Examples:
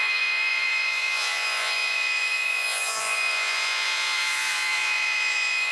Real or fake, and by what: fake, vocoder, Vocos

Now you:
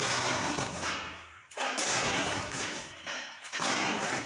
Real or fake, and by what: fake, codec, SNAC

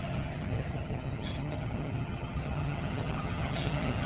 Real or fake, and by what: fake, vocoder, HiFi-GAN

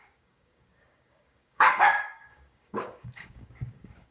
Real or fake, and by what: fake, codec, DAC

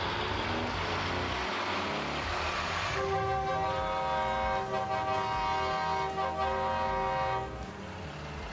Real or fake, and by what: real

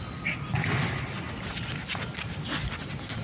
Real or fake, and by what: real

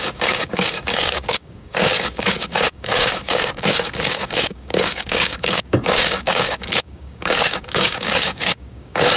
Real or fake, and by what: fake, codec, DAC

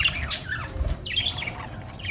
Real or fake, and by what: fake, vocoder, BigVGAN v2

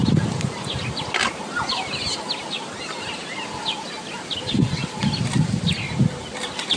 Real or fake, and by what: real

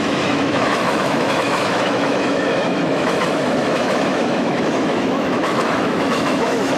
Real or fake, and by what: fake, autoencoder, DAC-VAE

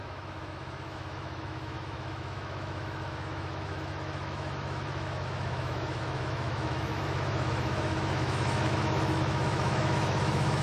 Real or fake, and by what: fake, autoencoder, DAC-VAE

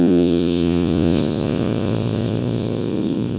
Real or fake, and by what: fake, vocoder, Vocos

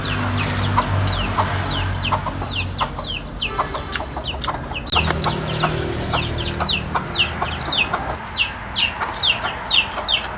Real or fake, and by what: real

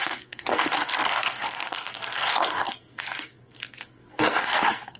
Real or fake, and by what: fake, codec, SNAC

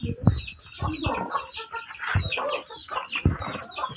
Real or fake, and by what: real